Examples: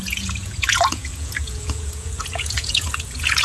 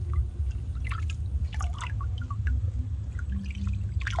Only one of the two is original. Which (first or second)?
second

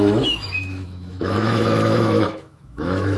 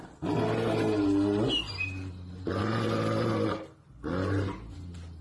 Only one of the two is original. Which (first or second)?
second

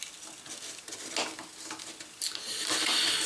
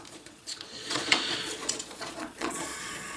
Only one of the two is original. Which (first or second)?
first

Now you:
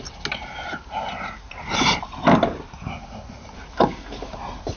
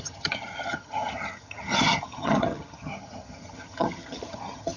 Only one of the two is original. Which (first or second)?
first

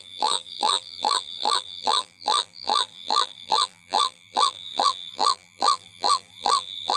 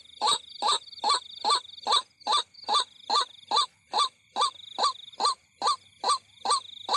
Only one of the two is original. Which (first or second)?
second